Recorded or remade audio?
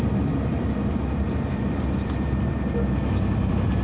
remade